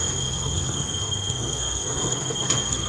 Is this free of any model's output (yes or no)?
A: no